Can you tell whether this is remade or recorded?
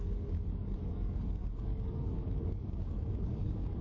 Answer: remade